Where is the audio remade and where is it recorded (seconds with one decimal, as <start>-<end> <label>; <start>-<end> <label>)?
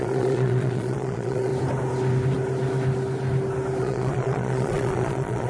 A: 0.0-1.5 remade; 1.5-3.8 recorded; 3.8-5.5 remade